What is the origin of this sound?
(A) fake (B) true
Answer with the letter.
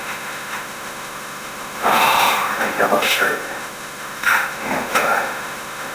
A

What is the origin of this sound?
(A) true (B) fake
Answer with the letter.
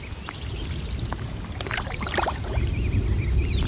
B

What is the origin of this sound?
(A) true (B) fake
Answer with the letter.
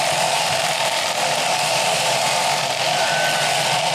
A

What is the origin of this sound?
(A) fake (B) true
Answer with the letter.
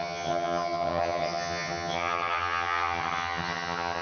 A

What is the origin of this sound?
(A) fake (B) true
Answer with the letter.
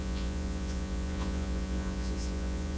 A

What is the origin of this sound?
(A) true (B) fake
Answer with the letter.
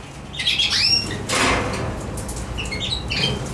A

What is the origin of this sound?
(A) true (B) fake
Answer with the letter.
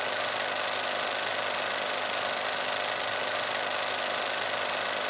A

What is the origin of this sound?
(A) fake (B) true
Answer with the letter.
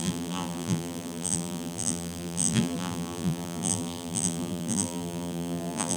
A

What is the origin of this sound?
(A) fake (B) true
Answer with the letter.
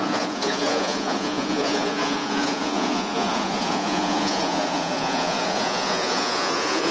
A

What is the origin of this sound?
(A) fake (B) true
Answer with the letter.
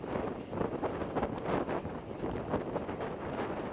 B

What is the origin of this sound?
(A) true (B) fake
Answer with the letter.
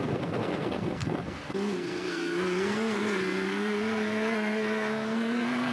B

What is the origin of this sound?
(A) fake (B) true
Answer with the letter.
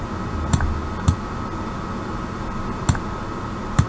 B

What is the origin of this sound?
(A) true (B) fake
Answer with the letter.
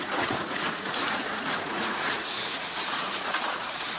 B